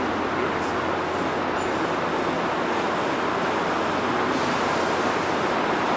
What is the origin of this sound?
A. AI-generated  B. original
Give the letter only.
B